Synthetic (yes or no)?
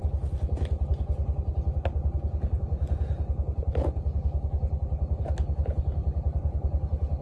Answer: no